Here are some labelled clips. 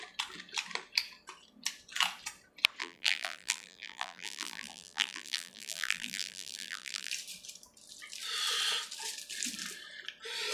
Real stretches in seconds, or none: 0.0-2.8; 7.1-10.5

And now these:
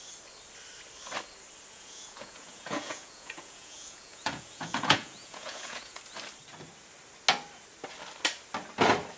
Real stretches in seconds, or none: 0.0-1.7; 6.0-9.2

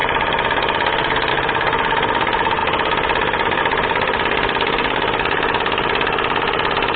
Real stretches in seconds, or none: 0.0-7.0